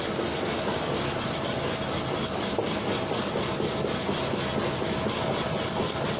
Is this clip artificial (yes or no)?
no